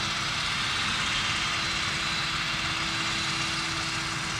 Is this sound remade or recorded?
recorded